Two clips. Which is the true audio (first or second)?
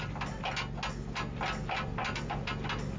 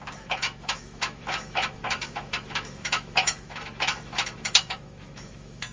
first